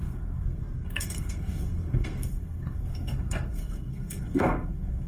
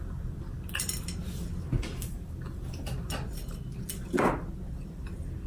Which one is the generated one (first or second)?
first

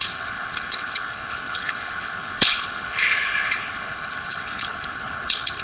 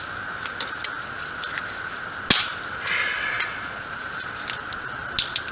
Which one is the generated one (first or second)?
first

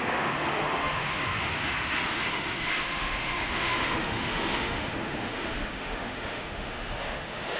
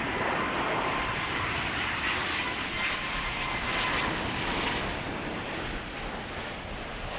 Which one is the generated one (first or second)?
first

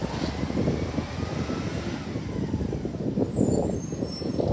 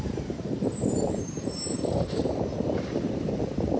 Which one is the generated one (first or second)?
second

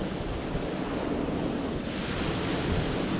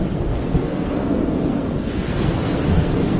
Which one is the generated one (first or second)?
second